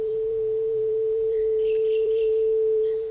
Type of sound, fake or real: fake